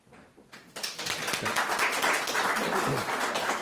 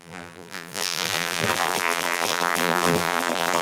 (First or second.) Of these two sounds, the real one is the first